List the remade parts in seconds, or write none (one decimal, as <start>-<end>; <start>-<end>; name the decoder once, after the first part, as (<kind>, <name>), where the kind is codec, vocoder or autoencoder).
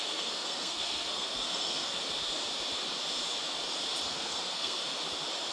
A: 0.0-2.0 (codec, SNAC); 4.1-4.8